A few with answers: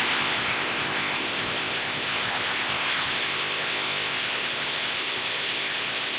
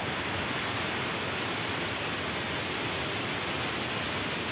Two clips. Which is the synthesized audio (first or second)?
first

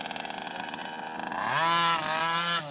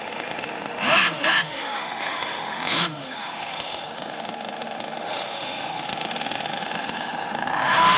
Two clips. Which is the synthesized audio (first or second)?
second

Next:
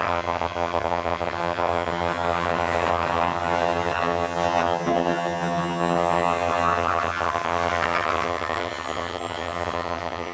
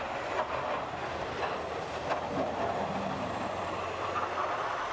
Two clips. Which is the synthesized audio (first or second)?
first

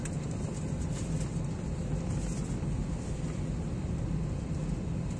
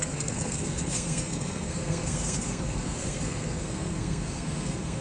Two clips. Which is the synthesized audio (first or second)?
second